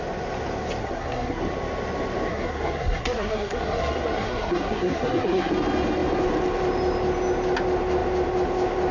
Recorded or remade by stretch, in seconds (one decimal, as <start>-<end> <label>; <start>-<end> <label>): 0.0-0.8 recorded; 0.8-1.4 remade; 1.4-2.3 recorded; 2.3-5.5 remade; 5.5-8.9 recorded